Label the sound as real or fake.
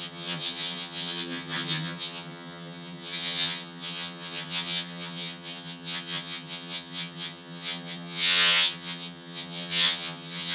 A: fake